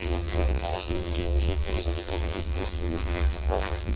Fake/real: fake